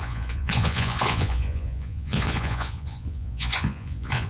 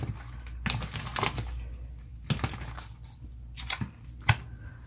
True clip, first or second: second